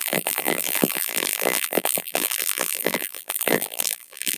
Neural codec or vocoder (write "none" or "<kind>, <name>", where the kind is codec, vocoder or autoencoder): vocoder, BigVGAN v2